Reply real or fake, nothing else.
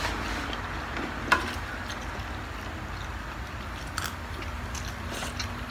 real